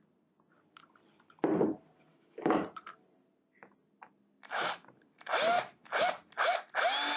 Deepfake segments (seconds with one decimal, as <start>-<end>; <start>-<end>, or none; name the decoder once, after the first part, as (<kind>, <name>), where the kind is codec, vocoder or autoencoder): 2.1-2.6 (autoencoder, DAC-VAE)